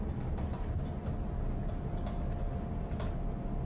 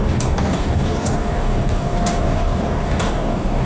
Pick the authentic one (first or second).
first